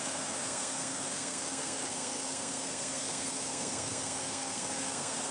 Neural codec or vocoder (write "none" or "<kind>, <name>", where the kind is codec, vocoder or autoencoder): codec, SNAC